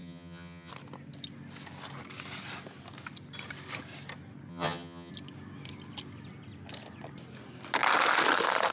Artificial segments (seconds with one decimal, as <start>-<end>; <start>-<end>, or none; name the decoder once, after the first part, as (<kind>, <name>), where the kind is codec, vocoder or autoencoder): 0.0-0.7 (vocoder, HiFi-GAN); 4.5-5.1